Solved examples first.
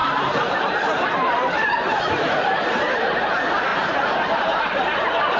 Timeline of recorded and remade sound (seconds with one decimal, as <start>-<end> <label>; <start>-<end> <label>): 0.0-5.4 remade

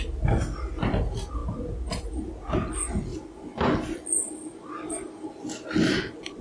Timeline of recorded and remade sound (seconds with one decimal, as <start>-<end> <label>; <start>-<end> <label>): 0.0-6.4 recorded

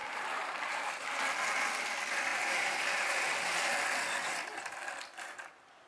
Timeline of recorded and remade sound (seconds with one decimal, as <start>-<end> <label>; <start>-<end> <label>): 0.0-1.2 remade; 1.2-2.3 recorded; 2.3-3.2 remade; 3.2-5.9 recorded